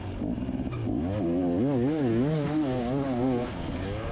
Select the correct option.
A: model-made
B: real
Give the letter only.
B